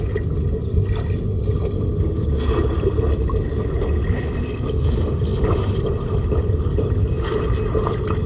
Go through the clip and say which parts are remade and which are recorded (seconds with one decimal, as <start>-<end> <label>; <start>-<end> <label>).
0.0-8.3 recorded